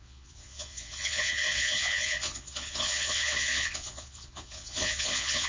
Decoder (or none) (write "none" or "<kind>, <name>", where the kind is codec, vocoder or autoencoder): vocoder, Vocos